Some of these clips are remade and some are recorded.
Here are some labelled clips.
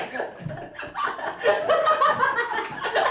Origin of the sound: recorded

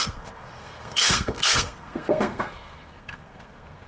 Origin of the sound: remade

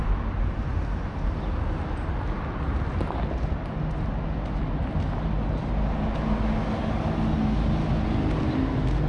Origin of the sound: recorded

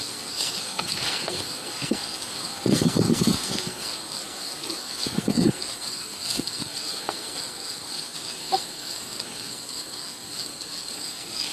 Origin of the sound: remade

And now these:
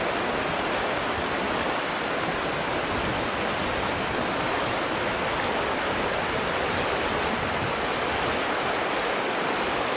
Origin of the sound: recorded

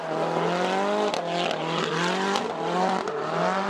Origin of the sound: recorded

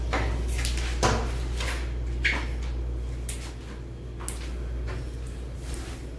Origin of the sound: recorded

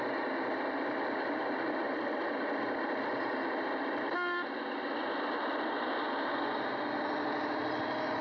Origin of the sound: recorded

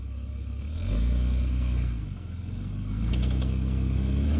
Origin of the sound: remade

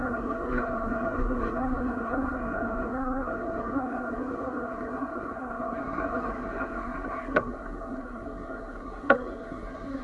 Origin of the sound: remade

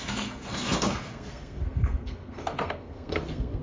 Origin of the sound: remade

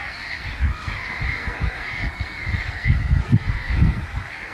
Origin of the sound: remade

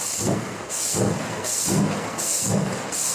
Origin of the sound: remade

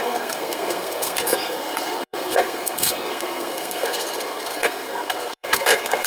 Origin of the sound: remade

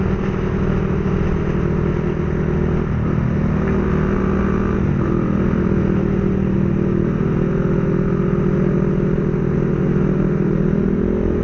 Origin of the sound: recorded